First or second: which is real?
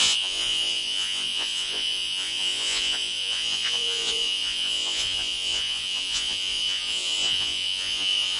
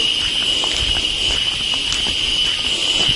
second